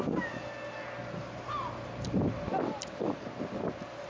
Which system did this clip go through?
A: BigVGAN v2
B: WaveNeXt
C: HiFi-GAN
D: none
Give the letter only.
D